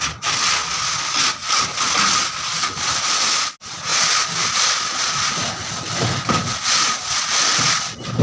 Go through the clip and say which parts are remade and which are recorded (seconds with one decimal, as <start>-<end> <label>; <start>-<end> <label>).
0.0-8.2 recorded